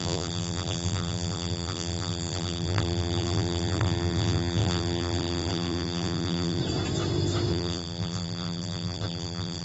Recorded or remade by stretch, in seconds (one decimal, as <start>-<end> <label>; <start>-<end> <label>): 0.0-6.6 remade; 6.6-7.5 recorded; 7.5-9.6 remade